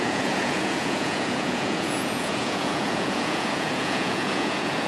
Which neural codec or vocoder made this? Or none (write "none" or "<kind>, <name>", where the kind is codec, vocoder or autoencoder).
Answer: vocoder, Vocos